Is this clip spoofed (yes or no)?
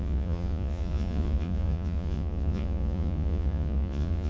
yes